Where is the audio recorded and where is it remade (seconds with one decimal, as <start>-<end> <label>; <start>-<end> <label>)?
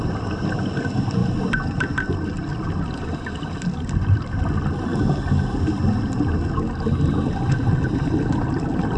0.0-1.2 recorded; 1.2-4.5 remade; 4.5-9.0 recorded